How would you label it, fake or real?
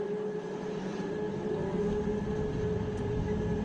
real